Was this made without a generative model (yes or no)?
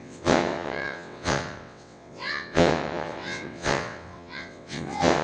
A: no